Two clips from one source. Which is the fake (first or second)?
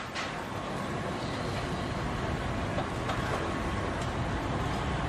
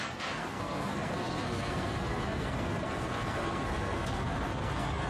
second